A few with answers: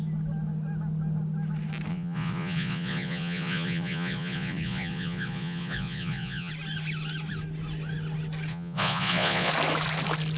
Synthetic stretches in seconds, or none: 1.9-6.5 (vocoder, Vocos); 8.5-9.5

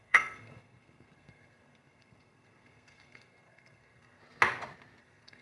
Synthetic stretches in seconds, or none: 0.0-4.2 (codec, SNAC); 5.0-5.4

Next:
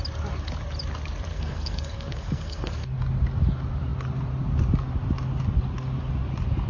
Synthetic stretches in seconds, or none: 1.3-3.0 (codec, SNAC)

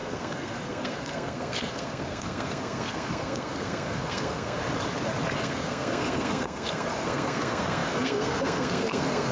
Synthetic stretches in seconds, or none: 0.0-4.6 (codec, SNAC); 5.4-9.3